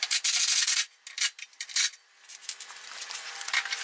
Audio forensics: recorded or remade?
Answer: recorded